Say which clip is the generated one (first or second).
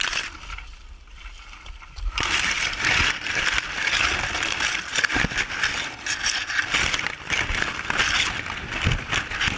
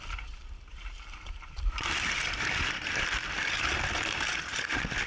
second